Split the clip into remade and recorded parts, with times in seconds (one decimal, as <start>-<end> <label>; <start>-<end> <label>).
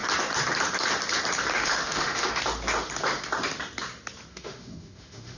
0.0-1.5 recorded; 1.5-2.4 remade; 2.4-4.3 recorded; 4.3-5.4 remade